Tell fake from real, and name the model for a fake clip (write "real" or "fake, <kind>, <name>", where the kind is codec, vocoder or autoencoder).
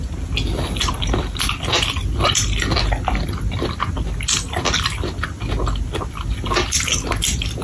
real